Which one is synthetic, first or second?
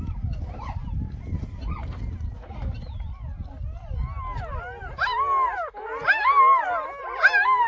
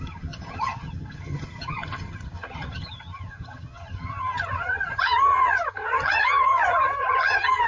second